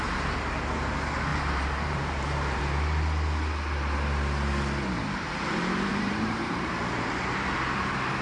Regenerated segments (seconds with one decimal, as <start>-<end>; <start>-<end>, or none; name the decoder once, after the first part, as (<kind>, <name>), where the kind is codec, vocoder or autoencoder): 1.3-2.6 (vocoder, BigVGAN v2); 5.9-7.1